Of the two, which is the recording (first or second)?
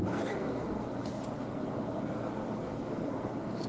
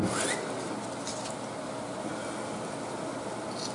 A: second